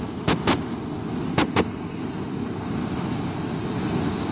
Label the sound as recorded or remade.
recorded